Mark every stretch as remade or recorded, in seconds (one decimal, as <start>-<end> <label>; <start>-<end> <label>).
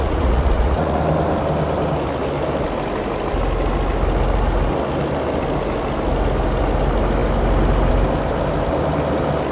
0.0-1.0 remade; 1.0-9.5 recorded